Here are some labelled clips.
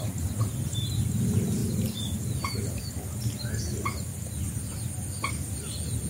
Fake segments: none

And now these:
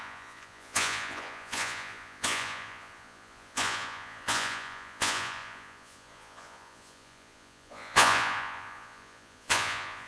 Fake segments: 0.0-10.1 (vocoder, Vocos)

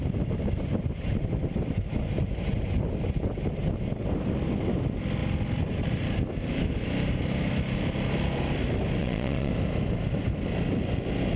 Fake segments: 9.0-9.5 (vocoder, Vocos)